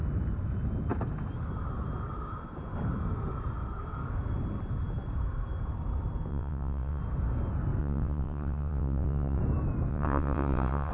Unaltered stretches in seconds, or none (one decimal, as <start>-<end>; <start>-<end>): 0.0-6.3; 7.0-7.8; 9.4-9.9